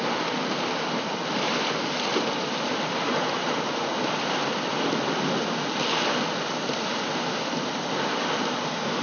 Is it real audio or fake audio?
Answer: real